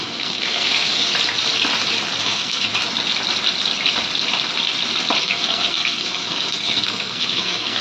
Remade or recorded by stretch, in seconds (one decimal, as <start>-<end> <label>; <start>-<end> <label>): 0.0-1.1 remade; 1.1-2.2 recorded; 2.2-2.7 remade; 2.7-5.2 recorded; 5.2-7.8 remade